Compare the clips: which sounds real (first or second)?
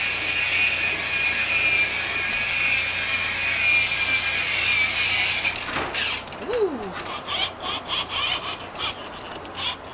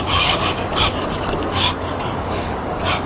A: first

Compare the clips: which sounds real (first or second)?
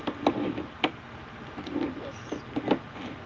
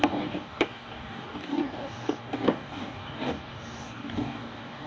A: first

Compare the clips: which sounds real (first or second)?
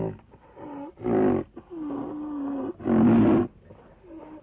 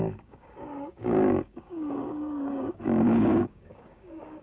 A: first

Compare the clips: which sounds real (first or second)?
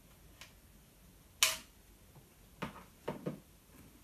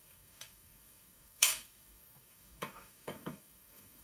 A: first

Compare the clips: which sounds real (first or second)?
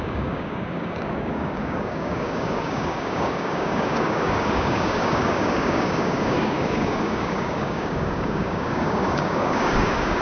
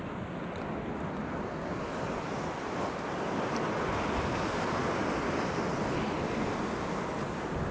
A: second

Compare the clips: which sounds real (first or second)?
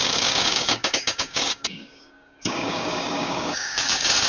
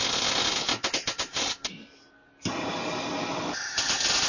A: second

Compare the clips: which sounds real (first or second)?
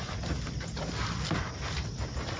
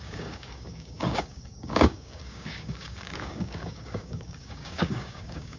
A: first